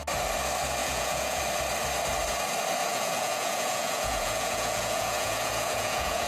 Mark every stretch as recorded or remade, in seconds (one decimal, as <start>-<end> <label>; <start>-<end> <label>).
0.0-0.8 recorded; 0.8-1.4 remade; 1.4-2.8 recorded; 2.8-6.3 remade